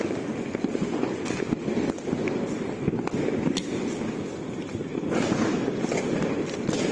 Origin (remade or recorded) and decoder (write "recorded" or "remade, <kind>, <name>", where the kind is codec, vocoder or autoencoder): recorded